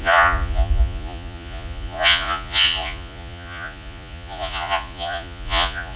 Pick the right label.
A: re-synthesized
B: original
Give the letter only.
A